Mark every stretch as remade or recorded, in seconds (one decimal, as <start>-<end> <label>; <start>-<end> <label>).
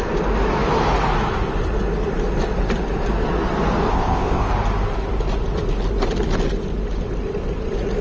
0.0-3.9 recorded; 3.9-4.5 remade; 4.5-8.0 recorded